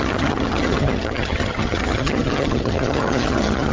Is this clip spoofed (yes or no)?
yes